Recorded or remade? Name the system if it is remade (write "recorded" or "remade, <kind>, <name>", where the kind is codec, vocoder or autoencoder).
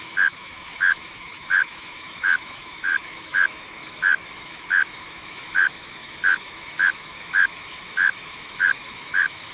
remade, autoencoder, DAC-VAE